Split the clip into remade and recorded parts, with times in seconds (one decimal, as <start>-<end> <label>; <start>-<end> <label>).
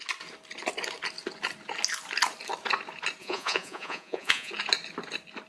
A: 0.0-3.2 recorded; 3.2-4.5 remade; 4.5-5.5 recorded